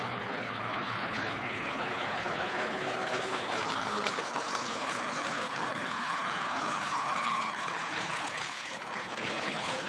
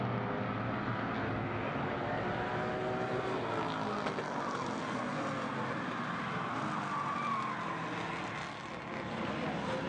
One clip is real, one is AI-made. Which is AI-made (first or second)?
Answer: first